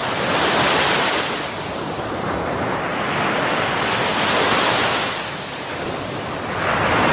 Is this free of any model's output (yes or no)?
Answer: yes